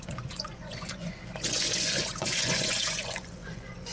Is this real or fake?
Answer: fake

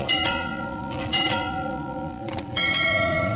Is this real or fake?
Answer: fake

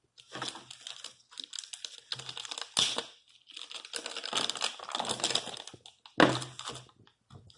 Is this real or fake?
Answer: real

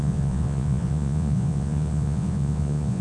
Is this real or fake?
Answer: fake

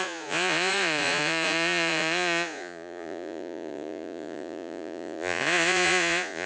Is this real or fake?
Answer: fake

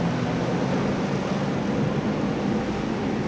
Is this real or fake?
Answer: real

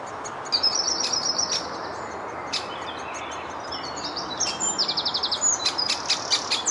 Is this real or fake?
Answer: real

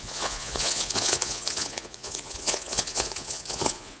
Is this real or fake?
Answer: fake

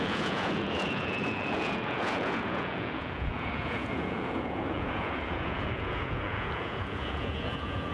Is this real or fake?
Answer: fake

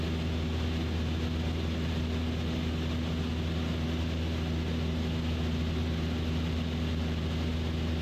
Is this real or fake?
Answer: real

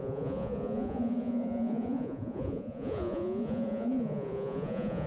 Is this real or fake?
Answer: fake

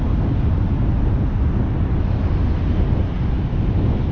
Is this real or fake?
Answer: real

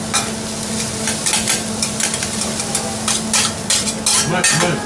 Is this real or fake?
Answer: real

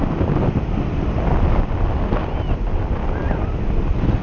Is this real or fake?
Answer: real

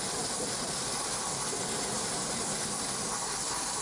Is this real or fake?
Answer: real